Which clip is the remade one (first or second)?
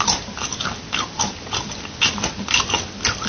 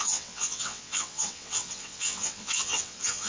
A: second